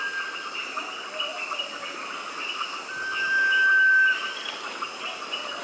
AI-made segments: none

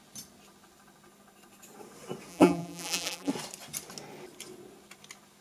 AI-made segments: 2.3-3.3 (vocoder, BigVGAN v2)

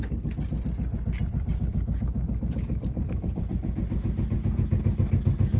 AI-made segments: 0.9-4.3 (vocoder, BigVGAN v2)

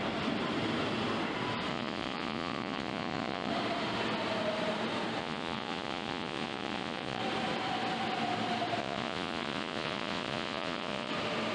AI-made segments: 1.7-3.5 (vocoder, Vocos); 5.2-7.2; 8.8-11.1

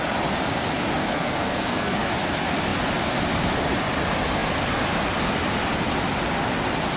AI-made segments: 1.0-2.1 (codec, SNAC)

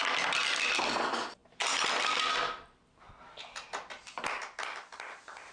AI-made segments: none

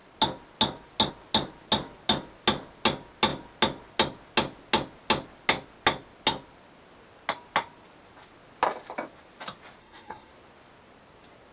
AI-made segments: 9.8-10.3 (codec, SNAC)

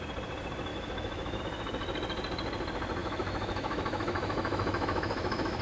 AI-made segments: 0.7-1.4 (autoencoder, DAC-VAE); 3.0-5.6